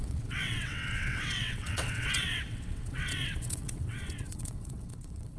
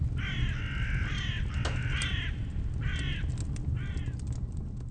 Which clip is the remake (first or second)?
first